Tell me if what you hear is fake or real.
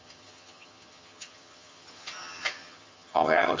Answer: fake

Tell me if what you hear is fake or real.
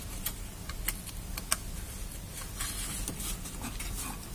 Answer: real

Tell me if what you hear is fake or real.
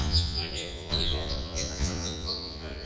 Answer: fake